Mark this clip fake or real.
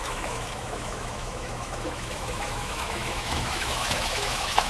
fake